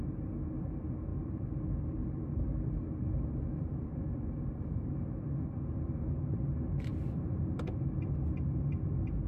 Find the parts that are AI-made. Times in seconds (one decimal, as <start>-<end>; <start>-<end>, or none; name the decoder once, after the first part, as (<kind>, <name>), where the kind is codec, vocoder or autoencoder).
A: 1.1-4.9 (vocoder, BigVGAN v2); 6.9-7.5